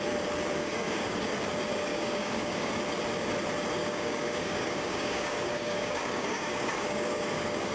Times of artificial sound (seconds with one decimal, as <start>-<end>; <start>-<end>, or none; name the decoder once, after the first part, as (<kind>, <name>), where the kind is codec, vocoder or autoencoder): 0.6-1.2 (codec, DAC); 1.9-2.7; 3.8-7.7